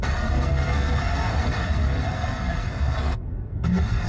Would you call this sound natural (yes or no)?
no